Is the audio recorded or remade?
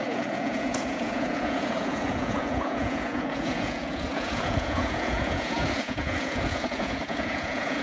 remade